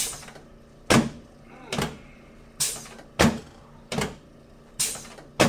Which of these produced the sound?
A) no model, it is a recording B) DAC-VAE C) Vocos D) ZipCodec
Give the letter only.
A